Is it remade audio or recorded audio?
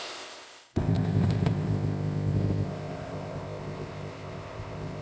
remade